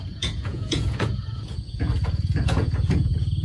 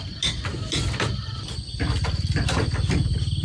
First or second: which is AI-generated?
first